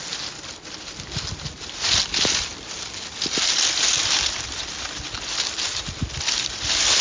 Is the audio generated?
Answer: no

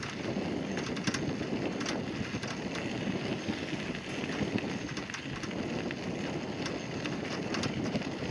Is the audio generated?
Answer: no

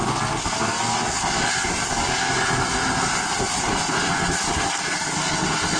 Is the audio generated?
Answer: no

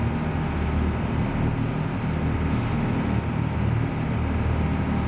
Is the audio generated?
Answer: no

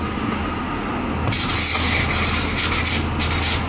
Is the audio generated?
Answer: no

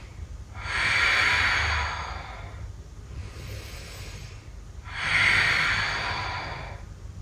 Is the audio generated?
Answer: no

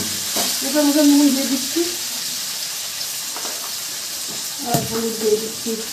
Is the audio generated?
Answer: yes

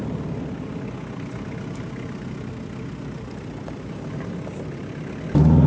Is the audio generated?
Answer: no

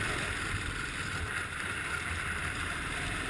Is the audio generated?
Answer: no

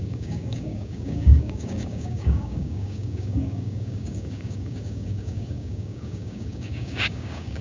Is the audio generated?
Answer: yes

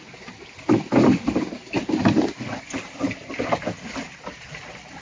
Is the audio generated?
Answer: no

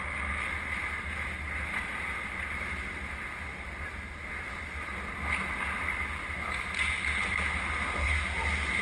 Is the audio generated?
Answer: no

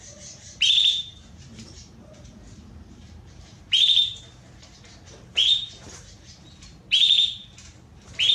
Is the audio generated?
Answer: yes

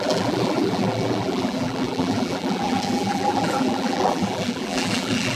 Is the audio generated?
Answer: yes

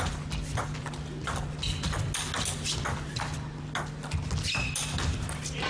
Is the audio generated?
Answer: no